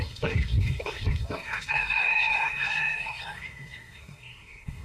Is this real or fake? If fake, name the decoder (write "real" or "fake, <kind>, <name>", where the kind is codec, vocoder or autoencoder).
fake, codec, SNAC